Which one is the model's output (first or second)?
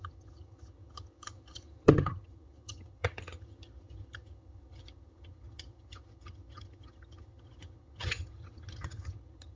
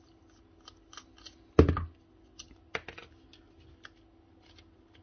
first